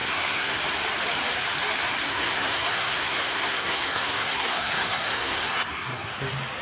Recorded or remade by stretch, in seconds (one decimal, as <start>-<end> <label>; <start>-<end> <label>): 0.0-0.6 remade; 0.6-2.1 recorded; 2.1-6.1 remade; 6.1-6.6 recorded